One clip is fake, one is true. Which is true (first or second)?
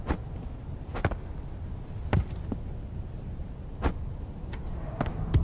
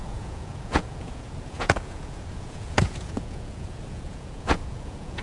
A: first